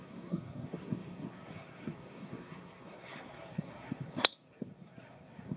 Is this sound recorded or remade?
remade